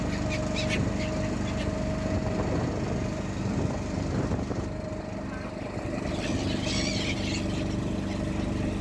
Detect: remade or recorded recorded